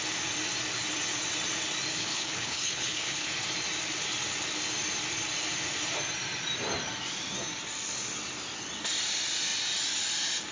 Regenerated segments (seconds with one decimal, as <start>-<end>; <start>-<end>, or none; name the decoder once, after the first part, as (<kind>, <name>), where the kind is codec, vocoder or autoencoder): 1.9-3.3 (codec, HILCodec)